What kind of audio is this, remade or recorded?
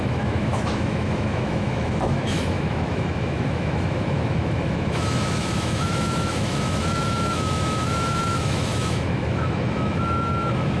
remade